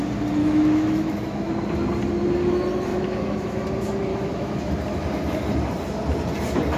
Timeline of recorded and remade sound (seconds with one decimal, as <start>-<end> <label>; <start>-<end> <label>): 0.0-0.4 recorded; 0.4-1.5 remade; 1.5-2.9 recorded; 2.9-3.6 remade; 3.6-4.1 recorded; 4.1-4.7 remade; 4.7-6.8 recorded